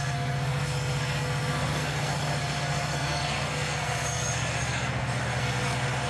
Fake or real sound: fake